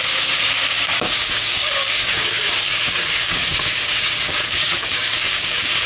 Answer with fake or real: fake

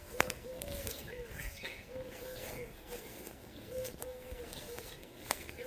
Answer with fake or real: fake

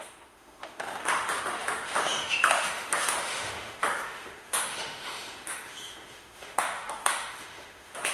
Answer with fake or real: fake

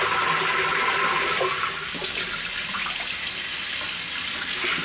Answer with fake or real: real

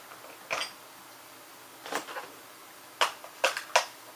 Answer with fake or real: real